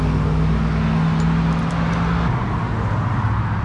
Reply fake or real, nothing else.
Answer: real